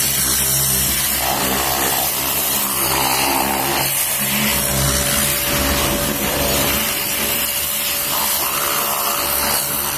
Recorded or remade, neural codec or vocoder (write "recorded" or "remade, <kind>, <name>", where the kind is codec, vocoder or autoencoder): recorded